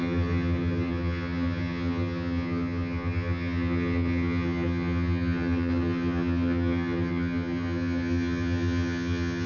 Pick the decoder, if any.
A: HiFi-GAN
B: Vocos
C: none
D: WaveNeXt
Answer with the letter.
A